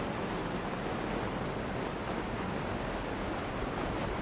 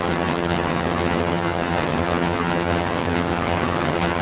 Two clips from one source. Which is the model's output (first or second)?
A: second